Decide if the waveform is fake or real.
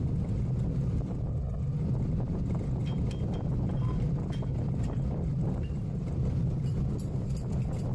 fake